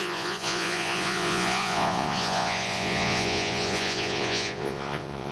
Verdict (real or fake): fake